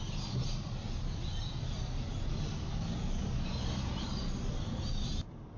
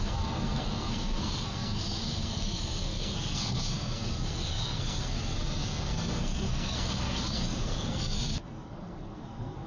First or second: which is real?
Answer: first